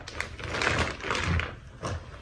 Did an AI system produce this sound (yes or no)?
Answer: no